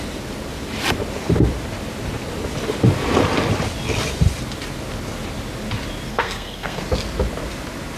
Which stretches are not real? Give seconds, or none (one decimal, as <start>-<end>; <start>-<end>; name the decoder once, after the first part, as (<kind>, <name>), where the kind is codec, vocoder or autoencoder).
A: 6.1-6.8 (codec, SNAC)